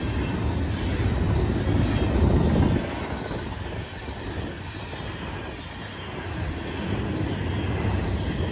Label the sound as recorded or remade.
recorded